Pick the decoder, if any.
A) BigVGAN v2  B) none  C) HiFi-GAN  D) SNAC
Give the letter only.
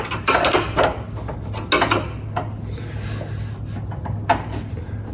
B